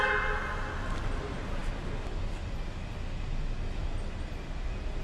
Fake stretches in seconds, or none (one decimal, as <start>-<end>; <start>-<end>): none